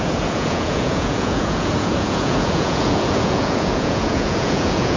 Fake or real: fake